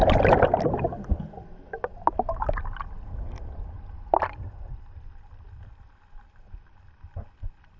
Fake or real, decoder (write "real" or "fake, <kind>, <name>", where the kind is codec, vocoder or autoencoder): real